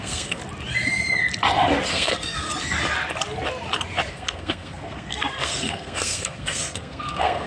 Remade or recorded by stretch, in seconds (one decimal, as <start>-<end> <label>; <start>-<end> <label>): 0.0-0.4 remade; 0.4-1.9 recorded; 1.9-2.5 remade; 2.5-4.1 recorded; 4.1-7.5 remade